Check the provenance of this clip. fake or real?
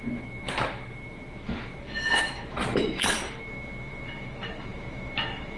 fake